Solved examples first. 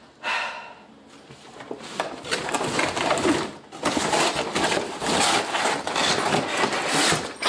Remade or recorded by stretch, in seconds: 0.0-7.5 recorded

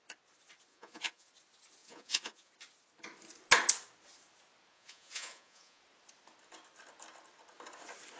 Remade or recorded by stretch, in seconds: 0.0-0.7 recorded; 0.7-1.3 remade; 1.3-1.8 recorded; 1.8-2.5 remade; 2.5-4.7 recorded; 4.7-5.8 remade; 5.8-8.2 recorded

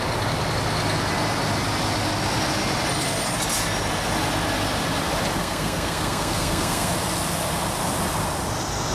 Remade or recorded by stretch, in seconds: 0.0-5.4 recorded; 5.4-6.9 remade; 6.9-8.9 recorded

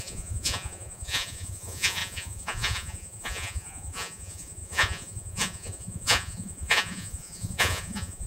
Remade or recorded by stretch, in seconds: 0.0-8.3 remade

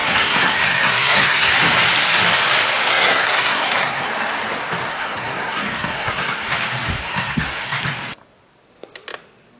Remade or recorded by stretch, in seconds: 0.0-1.5 remade; 1.5-2.9 recorded; 2.9-4.1 remade; 4.1-4.9 recorded; 4.9-6.5 remade; 6.5-7.0 recorded; 7.0-7.8 remade; 7.8-9.6 recorded

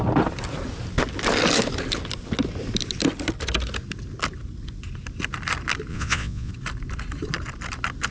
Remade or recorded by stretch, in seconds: 0.0-5.9 recorded; 5.9-6.5 remade; 6.5-8.1 recorded